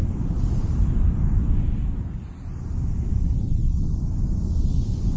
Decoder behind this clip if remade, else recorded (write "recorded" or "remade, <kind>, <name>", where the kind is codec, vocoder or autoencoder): recorded